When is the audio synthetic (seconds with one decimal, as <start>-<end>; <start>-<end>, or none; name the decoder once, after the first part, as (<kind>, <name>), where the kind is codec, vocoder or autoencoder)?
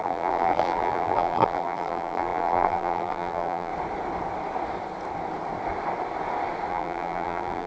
0.0-3.7 (vocoder, BigVGAN v2); 6.7-7.7